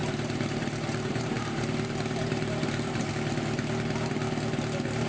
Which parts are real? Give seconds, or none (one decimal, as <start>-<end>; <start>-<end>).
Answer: 3.1-5.1